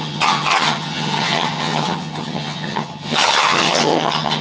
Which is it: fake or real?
fake